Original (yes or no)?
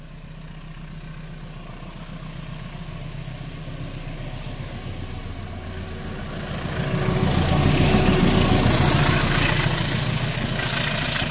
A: yes